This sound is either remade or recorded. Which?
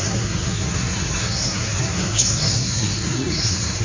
remade